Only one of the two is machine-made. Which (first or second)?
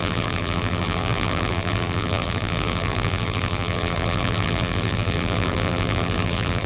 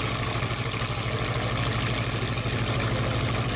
first